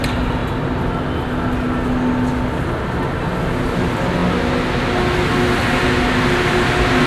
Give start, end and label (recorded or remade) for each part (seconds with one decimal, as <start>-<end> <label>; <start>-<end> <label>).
0.0-7.1 recorded